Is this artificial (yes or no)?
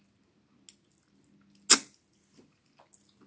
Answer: no